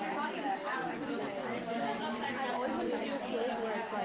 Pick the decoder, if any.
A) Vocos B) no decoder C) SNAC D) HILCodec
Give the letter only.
B